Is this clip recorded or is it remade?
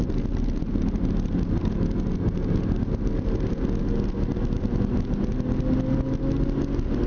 recorded